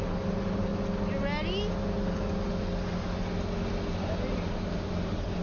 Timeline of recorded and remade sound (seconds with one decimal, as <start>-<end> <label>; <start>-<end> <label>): 0.0-0.7 remade; 0.7-3.9 recorded; 3.9-5.4 remade